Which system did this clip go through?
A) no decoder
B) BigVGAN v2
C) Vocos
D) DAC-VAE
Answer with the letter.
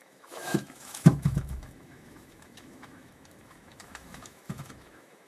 D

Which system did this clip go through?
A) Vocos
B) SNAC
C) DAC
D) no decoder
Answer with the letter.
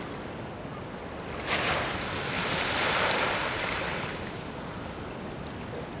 D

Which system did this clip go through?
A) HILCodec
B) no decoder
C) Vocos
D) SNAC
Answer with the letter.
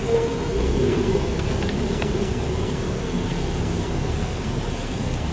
D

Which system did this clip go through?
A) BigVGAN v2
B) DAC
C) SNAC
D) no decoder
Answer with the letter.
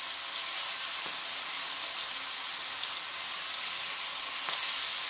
D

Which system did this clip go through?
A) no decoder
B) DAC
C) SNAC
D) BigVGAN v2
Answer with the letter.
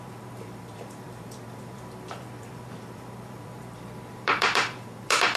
D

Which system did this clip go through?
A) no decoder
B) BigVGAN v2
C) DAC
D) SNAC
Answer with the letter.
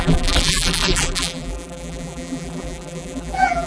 B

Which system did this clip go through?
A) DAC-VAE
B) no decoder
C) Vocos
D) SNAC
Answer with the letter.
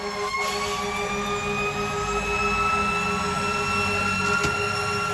B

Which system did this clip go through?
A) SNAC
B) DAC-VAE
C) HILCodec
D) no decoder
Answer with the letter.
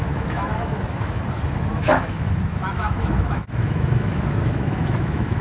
B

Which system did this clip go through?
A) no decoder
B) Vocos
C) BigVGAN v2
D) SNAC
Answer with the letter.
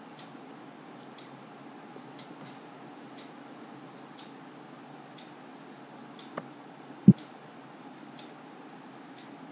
A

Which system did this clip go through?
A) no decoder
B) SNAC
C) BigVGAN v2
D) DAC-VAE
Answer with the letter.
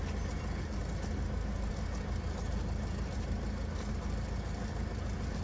A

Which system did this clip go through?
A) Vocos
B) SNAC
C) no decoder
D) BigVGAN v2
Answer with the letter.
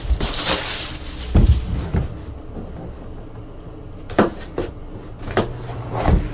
C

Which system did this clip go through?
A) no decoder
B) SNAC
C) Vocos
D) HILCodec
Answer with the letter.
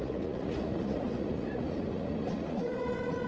C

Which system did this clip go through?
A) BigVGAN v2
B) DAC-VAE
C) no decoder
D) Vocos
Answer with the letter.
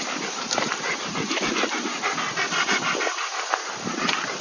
A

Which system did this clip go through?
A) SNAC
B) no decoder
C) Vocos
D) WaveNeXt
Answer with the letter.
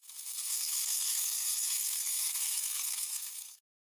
A